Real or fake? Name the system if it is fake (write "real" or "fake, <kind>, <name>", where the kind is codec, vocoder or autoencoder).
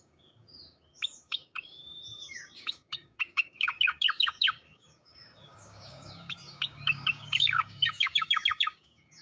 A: fake, codec, DAC